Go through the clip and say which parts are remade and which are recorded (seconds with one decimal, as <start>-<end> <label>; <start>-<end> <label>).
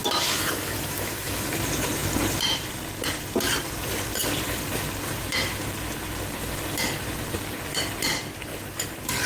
0.0-1.5 remade; 1.5-9.3 recorded